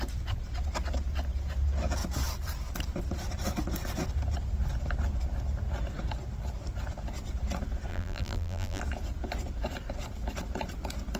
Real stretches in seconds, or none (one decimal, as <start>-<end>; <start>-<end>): 0.0-7.9; 8.8-11.2